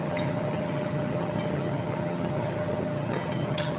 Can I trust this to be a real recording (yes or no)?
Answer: no